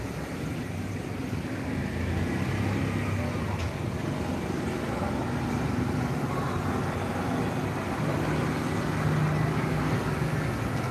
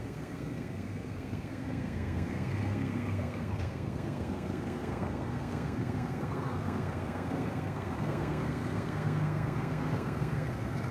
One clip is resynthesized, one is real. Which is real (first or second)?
first